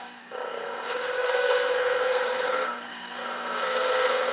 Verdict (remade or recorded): remade